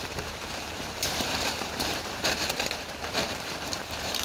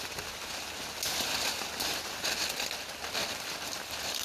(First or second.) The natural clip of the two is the second